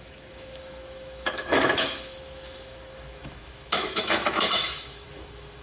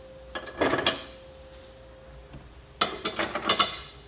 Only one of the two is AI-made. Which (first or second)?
first